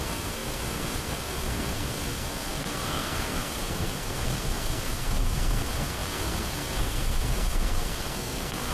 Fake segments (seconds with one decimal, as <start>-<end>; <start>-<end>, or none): 0.0-8.7